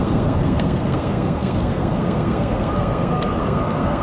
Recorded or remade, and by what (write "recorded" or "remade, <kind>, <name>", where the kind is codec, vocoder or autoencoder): remade, codec, SNAC